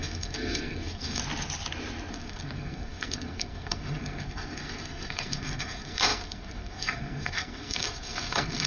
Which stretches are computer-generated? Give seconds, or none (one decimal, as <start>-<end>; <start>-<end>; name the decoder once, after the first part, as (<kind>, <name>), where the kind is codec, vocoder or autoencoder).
0.0-1.2 (codec, SNAC); 2.1-8.7